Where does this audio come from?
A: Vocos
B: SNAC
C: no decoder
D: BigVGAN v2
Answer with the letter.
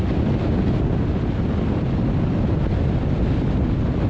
C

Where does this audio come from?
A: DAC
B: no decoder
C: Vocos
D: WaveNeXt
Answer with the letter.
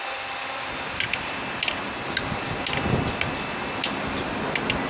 B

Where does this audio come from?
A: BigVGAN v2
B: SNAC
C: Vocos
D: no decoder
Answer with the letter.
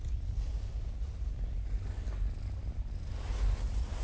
D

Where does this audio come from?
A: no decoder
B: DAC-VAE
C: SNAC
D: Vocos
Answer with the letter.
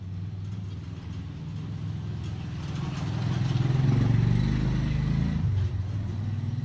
A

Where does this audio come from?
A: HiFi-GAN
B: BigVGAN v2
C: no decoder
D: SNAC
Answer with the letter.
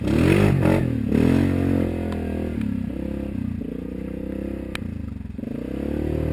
C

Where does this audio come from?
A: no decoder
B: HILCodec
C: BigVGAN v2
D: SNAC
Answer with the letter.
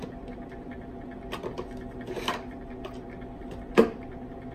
A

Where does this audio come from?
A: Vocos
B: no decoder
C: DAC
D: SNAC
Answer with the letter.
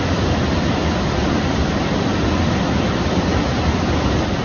B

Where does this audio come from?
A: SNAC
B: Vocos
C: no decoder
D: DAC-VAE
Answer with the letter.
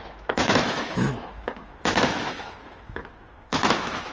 D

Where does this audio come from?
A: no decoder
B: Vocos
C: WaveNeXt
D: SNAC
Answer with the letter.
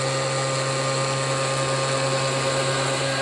A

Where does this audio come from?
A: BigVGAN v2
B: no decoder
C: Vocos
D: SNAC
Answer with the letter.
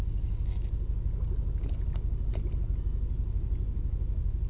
B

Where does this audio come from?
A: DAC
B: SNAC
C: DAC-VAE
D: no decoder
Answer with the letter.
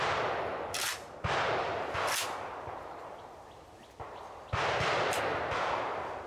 D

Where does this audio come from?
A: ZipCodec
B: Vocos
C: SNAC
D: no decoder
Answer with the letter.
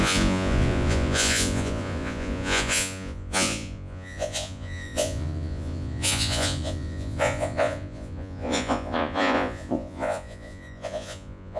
B